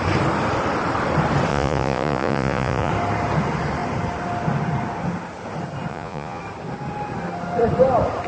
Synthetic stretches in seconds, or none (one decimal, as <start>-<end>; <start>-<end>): 1.5-2.9; 5.9-6.4